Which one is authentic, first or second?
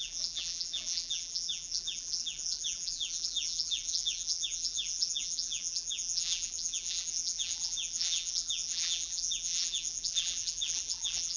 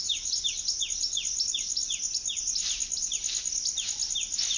second